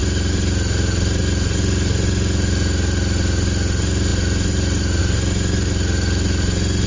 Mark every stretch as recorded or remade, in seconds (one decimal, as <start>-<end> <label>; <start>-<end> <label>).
0.0-6.9 recorded